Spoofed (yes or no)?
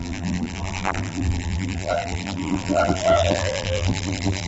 yes